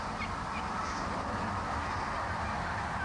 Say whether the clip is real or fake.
real